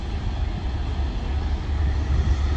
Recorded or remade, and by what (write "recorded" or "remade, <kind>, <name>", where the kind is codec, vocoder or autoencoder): recorded